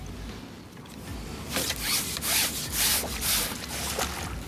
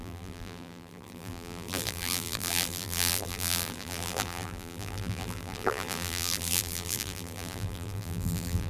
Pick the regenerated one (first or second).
second